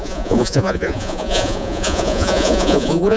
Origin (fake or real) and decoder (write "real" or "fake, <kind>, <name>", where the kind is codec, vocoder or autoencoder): fake, vocoder, Vocos